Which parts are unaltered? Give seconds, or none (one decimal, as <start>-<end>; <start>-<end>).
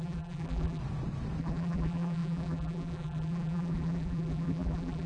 0.8-1.4